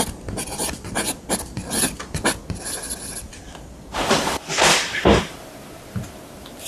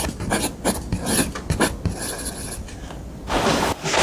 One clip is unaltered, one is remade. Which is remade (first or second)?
first